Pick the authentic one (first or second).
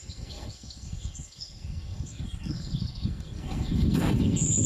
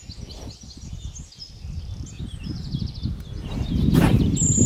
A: second